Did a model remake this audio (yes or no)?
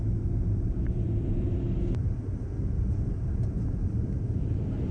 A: yes